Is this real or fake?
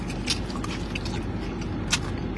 real